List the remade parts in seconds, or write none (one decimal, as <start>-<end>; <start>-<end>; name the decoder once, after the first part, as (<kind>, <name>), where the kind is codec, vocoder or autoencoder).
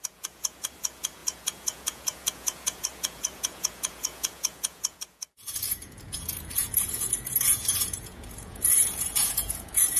0.0-10.0 (vocoder, Vocos)